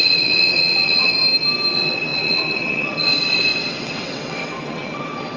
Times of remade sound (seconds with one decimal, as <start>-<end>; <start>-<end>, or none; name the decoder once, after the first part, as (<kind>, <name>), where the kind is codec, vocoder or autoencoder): 0.0-1.1 (vocoder, WaveNeXt); 1.7-5.4